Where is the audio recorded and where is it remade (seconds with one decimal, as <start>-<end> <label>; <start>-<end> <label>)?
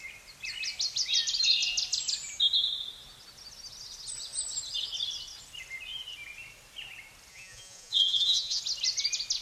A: 0.0-7.3 recorded; 7.3-8.6 remade; 8.6-9.4 recorded